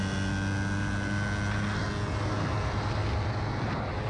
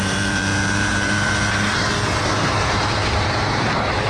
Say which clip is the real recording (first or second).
first